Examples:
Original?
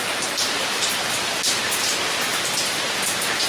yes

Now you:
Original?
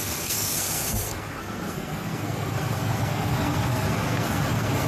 no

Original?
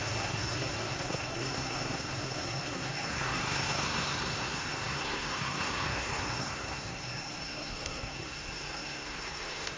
no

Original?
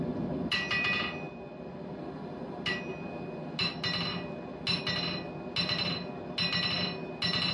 yes